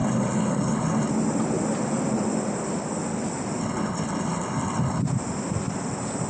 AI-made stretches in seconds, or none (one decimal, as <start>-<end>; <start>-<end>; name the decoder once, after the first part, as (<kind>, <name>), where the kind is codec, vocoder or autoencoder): 0.0-1.1 (codec, HILCodec); 3.6-5.0